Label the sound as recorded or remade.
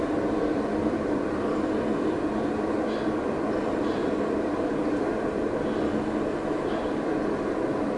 remade